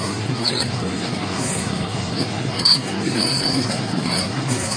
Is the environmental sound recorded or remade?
remade